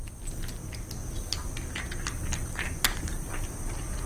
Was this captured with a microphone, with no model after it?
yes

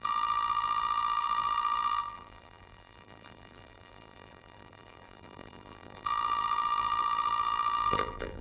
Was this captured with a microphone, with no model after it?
no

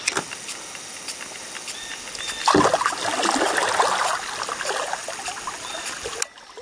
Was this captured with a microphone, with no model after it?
yes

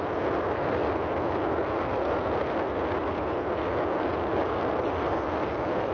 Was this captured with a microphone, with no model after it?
yes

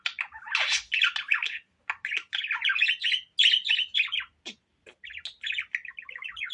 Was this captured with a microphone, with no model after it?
yes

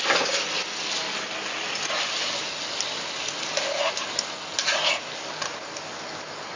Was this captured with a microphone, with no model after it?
yes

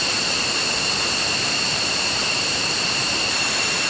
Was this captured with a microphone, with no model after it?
no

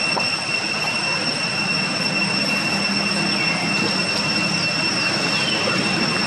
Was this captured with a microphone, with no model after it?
yes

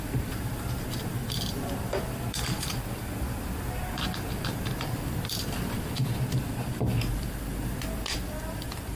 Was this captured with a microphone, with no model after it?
no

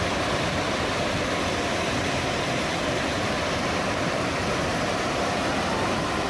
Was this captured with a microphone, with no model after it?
no